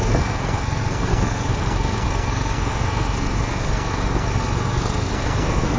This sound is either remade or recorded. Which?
remade